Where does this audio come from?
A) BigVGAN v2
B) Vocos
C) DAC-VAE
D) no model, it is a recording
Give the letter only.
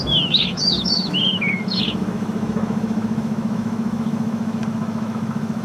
C